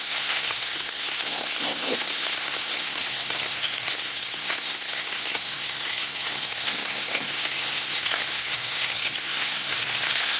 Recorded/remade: remade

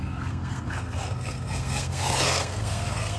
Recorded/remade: remade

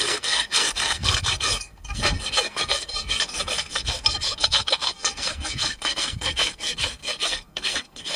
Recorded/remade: remade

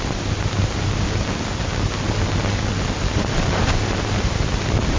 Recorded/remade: recorded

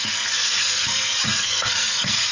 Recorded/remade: remade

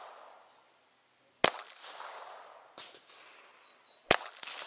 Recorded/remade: recorded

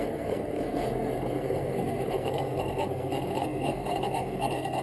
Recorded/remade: remade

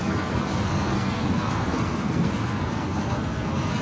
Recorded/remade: remade